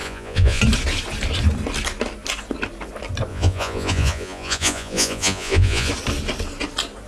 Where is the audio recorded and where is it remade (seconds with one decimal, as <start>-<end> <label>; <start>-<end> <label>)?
0.0-0.6 remade; 0.6-3.3 recorded; 3.3-5.9 remade; 5.9-7.1 recorded